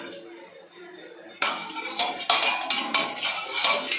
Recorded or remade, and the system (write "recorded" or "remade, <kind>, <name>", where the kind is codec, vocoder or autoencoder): recorded